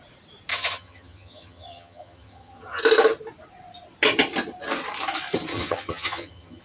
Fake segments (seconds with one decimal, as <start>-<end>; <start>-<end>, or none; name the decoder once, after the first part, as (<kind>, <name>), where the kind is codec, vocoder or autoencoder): 0.5-2.8 (vocoder, HiFi-GAN); 5.5-6.6